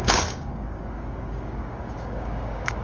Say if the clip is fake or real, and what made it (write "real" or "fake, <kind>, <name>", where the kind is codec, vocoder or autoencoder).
fake, codec, DAC